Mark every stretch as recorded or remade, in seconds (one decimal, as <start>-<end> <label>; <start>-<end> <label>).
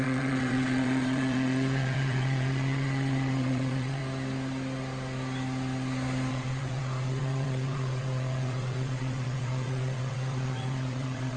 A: 0.0-4.0 remade; 4.0-6.3 recorded; 6.3-11.4 remade